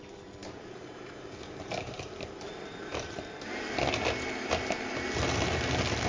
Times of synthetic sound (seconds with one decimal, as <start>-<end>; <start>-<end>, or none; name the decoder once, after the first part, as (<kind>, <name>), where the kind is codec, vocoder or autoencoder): 0.4-3.5 (vocoder, BigVGAN v2)